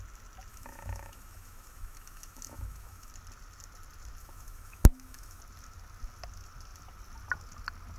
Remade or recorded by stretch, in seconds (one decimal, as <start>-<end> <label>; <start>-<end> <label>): 0.0-0.5 recorded; 0.5-3.1 remade; 3.1-4.2 recorded; 4.2-5.4 remade; 5.4-8.0 recorded